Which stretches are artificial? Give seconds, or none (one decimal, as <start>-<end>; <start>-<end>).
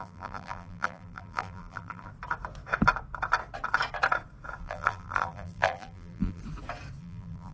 0.0-2.1; 4.6-6.4; 7.0-7.5